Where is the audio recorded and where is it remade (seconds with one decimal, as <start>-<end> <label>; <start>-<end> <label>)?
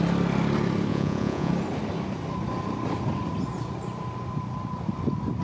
0.0-0.9 recorded; 0.9-1.5 remade; 1.5-5.4 recorded